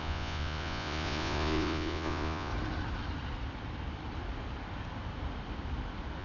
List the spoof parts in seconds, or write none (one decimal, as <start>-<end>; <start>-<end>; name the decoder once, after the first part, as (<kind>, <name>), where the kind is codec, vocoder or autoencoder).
0.0-2.5 (vocoder, Vocos)

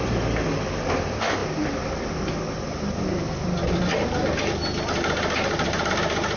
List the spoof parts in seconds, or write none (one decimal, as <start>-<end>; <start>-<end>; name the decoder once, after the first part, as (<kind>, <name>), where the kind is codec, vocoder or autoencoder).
none

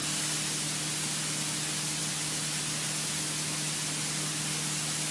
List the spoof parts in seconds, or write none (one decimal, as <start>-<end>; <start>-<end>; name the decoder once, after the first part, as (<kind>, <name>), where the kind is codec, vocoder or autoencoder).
none

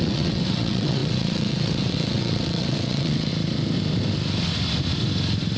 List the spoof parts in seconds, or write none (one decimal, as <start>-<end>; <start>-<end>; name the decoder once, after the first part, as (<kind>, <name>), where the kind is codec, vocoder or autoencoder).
0.0-3.3 (vocoder, WaveNeXt)

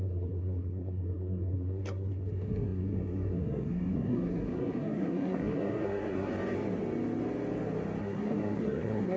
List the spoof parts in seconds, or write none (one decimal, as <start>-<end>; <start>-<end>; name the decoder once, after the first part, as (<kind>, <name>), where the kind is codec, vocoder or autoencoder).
0.0-6.3 (codec, SNAC); 8.0-9.2

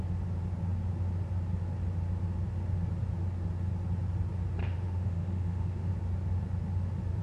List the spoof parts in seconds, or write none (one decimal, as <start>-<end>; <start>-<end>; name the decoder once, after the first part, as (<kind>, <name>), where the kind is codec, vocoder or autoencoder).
4.6-5.9 (autoencoder, DAC-VAE)

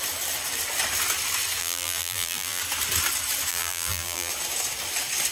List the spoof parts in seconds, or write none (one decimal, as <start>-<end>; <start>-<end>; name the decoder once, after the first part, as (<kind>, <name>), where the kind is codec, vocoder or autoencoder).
1.6-2.6 (vocoder, BigVGAN v2); 3.5-4.3